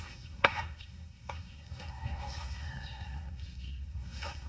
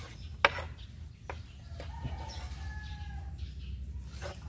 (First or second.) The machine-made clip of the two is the first